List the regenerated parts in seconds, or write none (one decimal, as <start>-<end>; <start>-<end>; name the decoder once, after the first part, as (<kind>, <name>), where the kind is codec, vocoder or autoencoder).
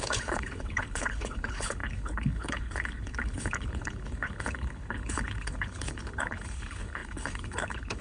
0.0-8.0 (codec, HILCodec)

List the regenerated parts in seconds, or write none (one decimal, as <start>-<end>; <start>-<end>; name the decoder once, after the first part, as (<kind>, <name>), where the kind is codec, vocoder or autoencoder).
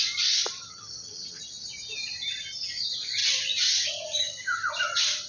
0.6-1.4 (vocoder, HiFi-GAN)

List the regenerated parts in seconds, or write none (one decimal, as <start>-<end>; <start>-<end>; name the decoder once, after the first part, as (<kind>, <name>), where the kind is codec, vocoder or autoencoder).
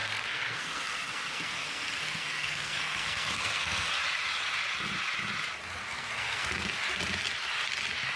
0.0-3.9 (codec, SNAC); 5.8-6.7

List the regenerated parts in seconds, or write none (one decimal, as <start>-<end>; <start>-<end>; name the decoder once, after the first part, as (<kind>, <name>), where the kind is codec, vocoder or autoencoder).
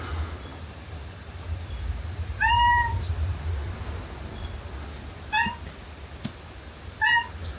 0.5-1.7 (vocoder, BigVGAN v2)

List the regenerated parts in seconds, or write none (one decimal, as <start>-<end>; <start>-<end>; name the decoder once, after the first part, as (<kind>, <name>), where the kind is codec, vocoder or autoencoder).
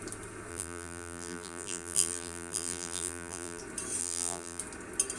0.5-3.6 (vocoder, BigVGAN v2); 4.0-4.6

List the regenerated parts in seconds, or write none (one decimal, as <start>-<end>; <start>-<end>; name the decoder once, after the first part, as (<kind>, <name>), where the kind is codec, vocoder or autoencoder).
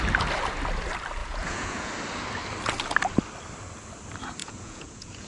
1.2-1.9 (vocoder, Vocos); 4.4-5.3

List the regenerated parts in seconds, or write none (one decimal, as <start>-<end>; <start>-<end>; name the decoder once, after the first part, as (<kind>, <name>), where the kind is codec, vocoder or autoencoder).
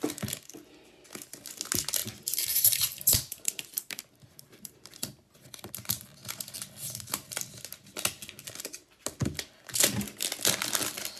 2.0-5.7 (vocoder, BigVGAN v2); 9.2-10.2